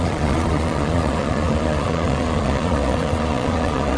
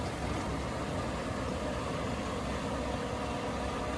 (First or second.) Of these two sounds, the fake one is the first